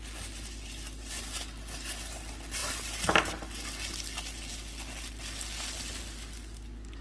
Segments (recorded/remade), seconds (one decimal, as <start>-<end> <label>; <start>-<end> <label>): 0.0-7.0 recorded